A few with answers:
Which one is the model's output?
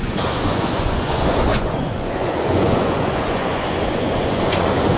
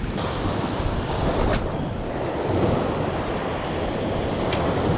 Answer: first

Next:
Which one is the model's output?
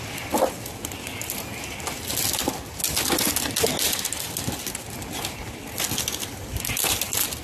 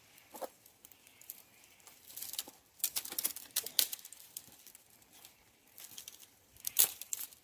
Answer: second